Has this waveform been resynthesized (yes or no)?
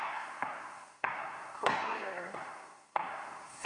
yes